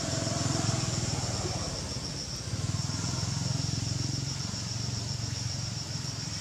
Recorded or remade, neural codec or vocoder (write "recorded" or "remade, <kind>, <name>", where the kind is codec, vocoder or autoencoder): recorded